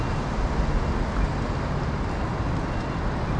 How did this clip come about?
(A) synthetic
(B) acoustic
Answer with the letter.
B